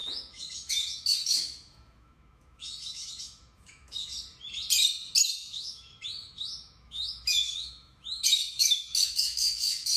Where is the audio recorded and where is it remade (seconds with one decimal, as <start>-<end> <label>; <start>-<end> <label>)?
0.0-4.1 remade; 4.1-5.2 recorded; 5.2-10.0 remade